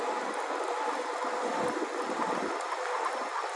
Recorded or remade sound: recorded